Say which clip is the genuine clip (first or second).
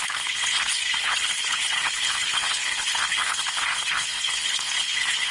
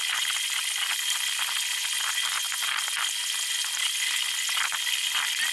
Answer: second